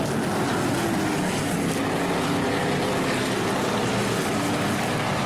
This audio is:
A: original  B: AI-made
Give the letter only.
A